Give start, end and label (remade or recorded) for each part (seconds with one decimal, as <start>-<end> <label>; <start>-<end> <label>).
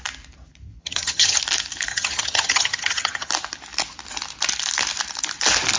0.0-0.8 recorded; 0.8-1.4 remade; 1.4-1.9 recorded; 1.9-3.3 remade; 3.3-5.8 recorded